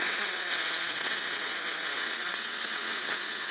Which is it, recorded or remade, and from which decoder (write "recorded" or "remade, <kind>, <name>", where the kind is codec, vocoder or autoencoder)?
remade, vocoder, WaveNeXt